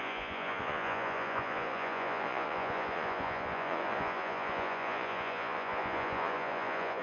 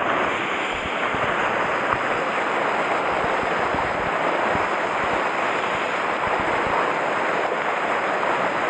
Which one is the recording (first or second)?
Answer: second